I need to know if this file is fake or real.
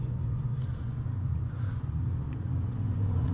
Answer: fake